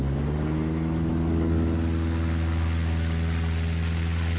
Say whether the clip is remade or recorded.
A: recorded